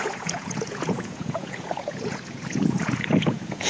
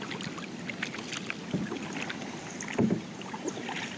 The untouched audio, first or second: second